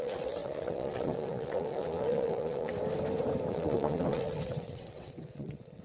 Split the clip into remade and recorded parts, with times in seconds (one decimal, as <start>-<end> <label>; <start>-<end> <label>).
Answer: 0.0-2.7 remade; 2.7-3.5 recorded; 3.5-5.8 remade